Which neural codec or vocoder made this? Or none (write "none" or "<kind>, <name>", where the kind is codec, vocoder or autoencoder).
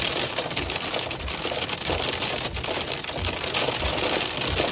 none